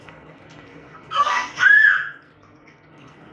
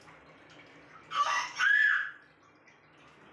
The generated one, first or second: first